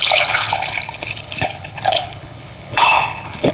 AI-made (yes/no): yes